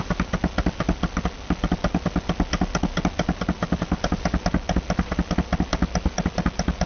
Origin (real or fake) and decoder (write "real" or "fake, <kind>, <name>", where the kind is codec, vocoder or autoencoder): real